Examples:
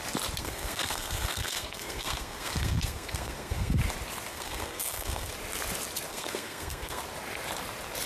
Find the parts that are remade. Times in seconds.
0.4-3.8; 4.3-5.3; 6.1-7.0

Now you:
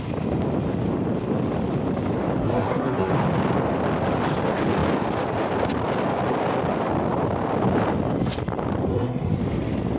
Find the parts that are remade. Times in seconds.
2.4-3.1; 8.9-9.4

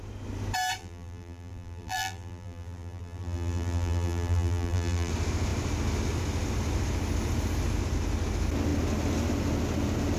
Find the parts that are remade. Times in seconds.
0.8-5.1

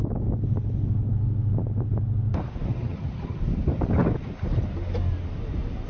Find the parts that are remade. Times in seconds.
2.7-3.4